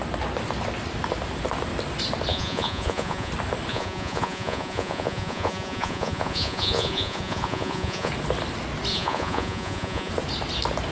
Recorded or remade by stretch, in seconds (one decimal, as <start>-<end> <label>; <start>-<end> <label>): 0.0-2.3 recorded; 2.3-3.3 remade; 3.3-3.7 recorded; 3.7-8.1 remade; 8.1-8.9 recorded; 8.9-10.1 remade; 10.1-10.9 recorded